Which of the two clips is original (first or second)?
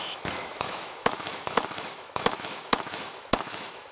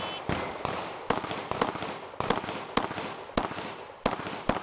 second